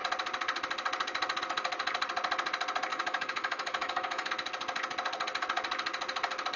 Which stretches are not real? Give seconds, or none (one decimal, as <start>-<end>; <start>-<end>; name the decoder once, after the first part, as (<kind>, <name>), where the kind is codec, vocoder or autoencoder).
2.9-4.3 (autoencoder, DAC-VAE)